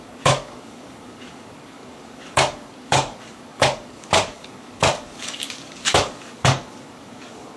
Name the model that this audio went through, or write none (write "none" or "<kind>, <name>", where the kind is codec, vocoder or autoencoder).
codec, DAC